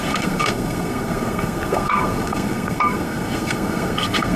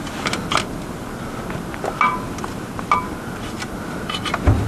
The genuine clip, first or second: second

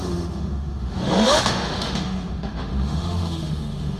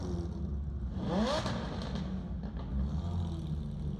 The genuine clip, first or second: second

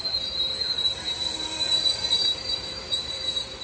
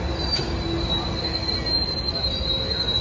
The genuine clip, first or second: second